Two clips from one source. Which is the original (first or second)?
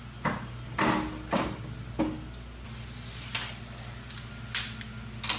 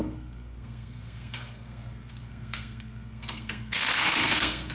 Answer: first